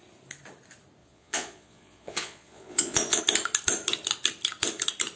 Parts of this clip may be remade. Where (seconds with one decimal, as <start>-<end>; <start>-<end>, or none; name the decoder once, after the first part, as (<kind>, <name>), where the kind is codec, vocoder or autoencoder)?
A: 1.0-3.2 (vocoder, Vocos)